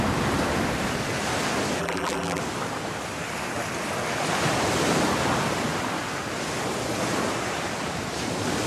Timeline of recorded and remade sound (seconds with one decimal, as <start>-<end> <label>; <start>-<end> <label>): 0.0-1.8 recorded; 1.8-2.4 remade; 2.4-8.7 recorded